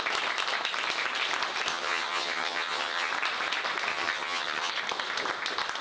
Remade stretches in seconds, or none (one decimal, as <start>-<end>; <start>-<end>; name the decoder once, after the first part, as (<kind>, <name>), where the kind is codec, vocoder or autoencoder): 1.7-3.1 (vocoder, HiFi-GAN); 3.9-4.7